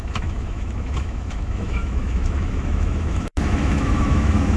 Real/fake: fake